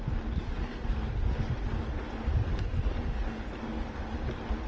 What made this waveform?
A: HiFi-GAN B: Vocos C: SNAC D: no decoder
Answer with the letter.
D